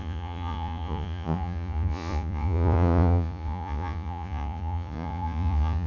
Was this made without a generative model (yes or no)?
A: no